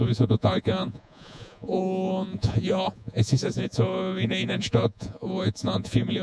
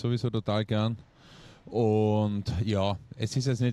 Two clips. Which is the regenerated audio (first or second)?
first